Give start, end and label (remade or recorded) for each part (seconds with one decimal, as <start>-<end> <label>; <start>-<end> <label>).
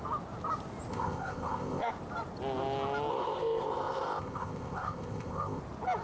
0.0-0.9 recorded; 0.9-1.9 remade; 1.9-3.1 recorded; 3.1-5.6 remade; 5.6-6.0 recorded